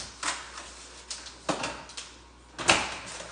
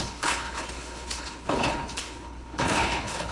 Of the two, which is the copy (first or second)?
second